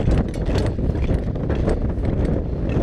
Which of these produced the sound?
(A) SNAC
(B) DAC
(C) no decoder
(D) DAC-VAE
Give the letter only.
C